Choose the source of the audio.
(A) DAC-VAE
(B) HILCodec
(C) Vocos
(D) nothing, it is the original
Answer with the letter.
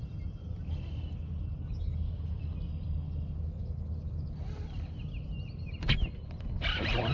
D